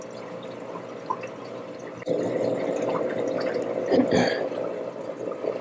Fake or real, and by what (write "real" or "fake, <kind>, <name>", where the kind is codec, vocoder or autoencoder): real